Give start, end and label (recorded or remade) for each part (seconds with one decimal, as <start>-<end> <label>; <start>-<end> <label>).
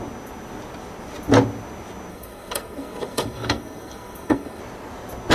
0.0-2.1 recorded; 2.1-4.6 remade; 4.6-5.3 recorded